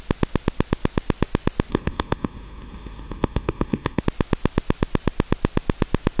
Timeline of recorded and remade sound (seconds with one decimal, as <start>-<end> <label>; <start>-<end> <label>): 0.0-1.7 recorded; 1.7-4.0 remade; 4.0-6.2 recorded